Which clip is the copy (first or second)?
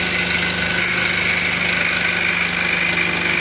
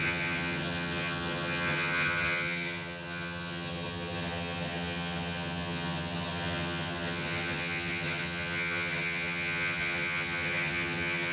second